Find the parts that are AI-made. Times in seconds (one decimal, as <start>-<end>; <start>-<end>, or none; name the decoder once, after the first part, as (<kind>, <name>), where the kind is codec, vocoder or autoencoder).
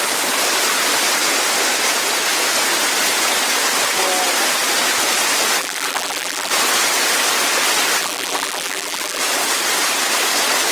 5.6-6.5 (vocoder, BigVGAN v2); 8.0-9.2